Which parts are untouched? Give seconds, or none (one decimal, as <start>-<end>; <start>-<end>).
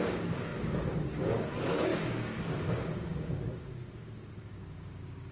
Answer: none